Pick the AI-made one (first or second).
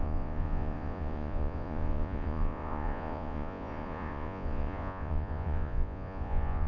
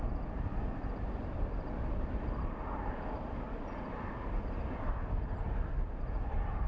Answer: first